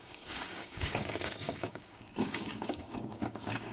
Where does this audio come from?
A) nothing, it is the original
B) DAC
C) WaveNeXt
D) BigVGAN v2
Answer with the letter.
B